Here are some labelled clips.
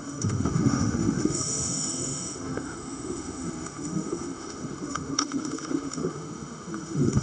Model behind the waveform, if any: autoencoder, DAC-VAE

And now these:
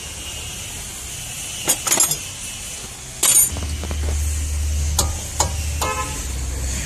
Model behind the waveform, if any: none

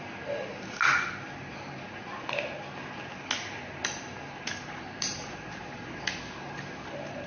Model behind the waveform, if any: none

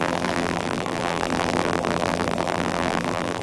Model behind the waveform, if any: vocoder, BigVGAN v2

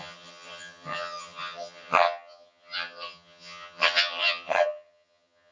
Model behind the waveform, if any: vocoder, HiFi-GAN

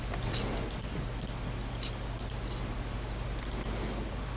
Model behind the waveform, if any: none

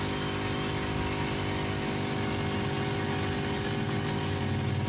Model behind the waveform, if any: none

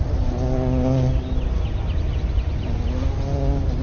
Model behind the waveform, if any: none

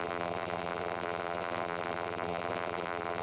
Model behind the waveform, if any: vocoder, BigVGAN v2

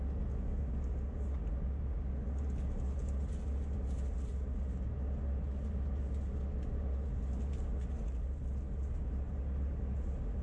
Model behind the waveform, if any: none